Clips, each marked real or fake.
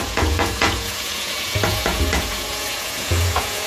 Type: fake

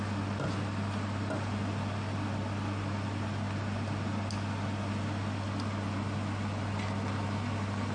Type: real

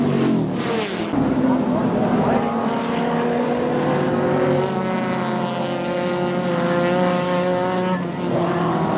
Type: real